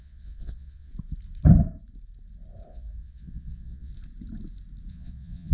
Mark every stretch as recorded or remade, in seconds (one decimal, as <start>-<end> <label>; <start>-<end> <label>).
0.0-0.9 remade; 0.9-2.7 recorded; 2.7-3.9 remade; 3.9-4.9 recorded; 4.9-5.5 remade